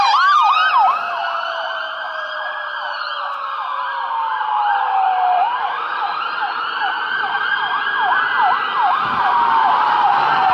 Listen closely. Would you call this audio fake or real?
fake